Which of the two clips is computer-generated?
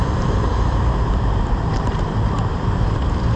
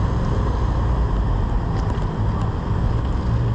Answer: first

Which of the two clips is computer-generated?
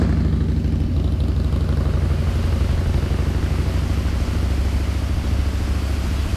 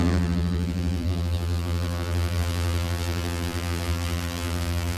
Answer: second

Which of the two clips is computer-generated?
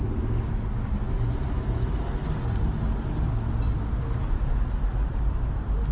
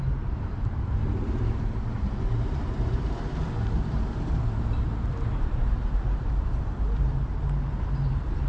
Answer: second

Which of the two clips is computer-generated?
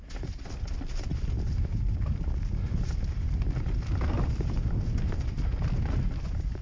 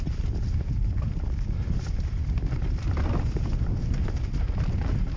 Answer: second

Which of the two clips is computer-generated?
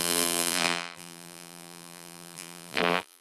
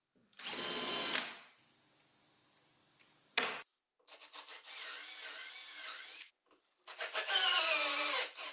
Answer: first